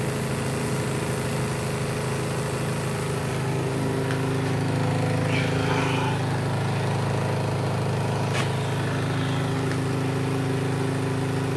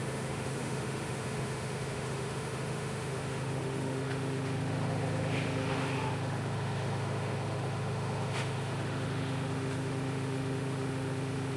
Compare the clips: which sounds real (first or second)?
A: first